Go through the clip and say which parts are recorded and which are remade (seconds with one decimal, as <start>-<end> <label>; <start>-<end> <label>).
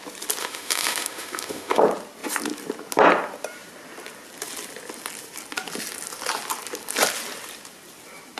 0.0-0.4 recorded; 0.4-1.8 remade; 1.8-8.4 recorded